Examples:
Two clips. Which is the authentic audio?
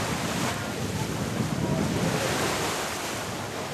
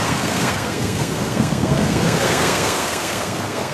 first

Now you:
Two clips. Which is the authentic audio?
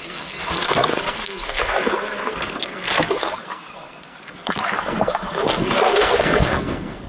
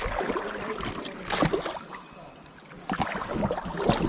second